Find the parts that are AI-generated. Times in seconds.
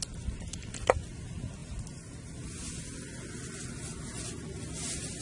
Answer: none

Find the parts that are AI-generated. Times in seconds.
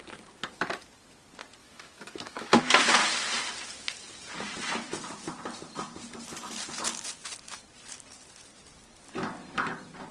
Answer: 1.6-2.6 (autoencoder, DAC-VAE)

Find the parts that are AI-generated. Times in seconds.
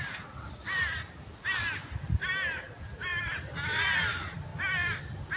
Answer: none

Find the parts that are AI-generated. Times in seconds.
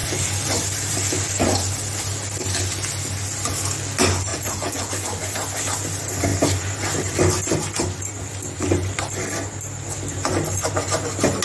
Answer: 4.3-4.9 (vocoder, Vocos)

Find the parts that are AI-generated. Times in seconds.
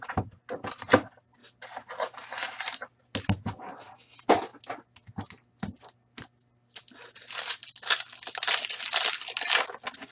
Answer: none